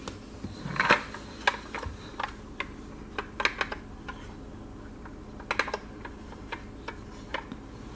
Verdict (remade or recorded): recorded